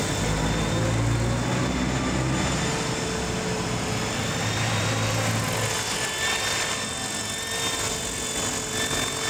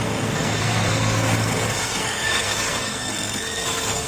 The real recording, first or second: first